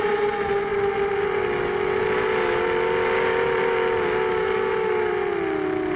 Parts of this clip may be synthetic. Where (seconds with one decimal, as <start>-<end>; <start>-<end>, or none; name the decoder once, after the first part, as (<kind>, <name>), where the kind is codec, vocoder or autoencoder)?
4.3-5.1 (codec, DAC)